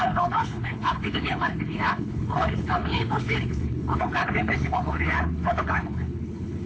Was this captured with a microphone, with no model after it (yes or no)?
no